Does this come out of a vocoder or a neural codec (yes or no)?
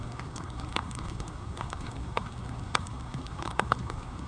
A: yes